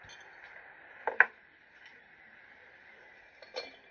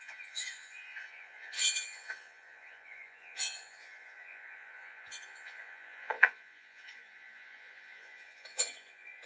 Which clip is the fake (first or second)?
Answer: second